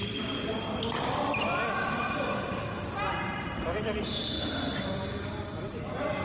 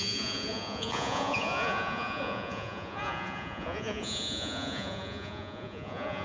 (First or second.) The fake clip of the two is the second